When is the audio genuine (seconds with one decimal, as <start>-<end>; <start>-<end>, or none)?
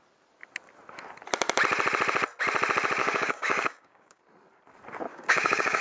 0.0-3.0; 4.2-5.1